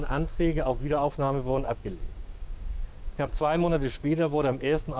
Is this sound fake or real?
fake